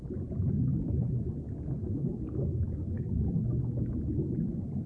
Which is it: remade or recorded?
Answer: recorded